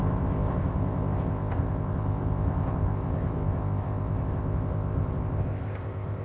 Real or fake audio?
fake